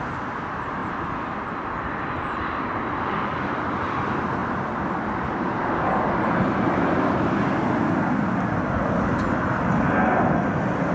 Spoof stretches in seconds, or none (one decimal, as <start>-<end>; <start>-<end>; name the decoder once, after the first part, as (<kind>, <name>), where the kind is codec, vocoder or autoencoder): none